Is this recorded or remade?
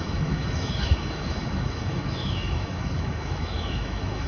remade